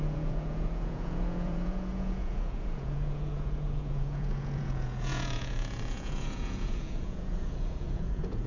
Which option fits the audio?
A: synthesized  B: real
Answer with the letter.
A